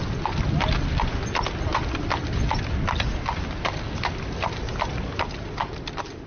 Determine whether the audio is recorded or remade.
recorded